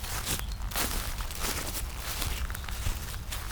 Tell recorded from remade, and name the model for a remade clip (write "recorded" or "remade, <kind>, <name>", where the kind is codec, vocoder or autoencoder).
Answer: recorded